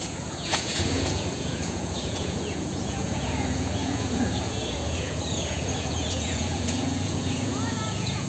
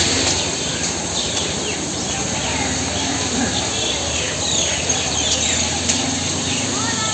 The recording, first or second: second